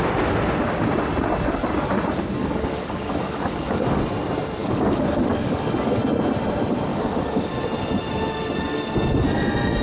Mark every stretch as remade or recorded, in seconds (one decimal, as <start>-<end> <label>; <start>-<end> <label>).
0.0-2.4 recorded; 2.4-4.0 remade; 4.0-4.6 recorded; 4.6-6.0 remade; 6.0-6.9 recorded; 6.9-7.5 remade; 7.5-9.8 recorded